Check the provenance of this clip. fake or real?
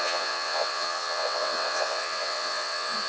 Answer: fake